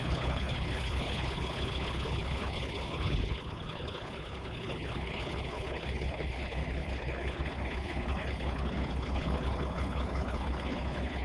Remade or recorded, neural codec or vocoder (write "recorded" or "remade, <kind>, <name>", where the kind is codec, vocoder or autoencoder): remade, codec, HILCodec